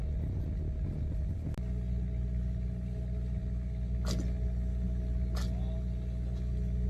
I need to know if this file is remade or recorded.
recorded